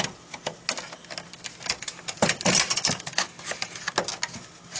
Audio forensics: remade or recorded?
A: recorded